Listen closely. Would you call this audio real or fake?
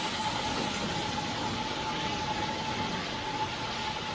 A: real